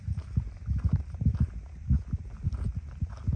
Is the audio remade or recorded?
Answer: recorded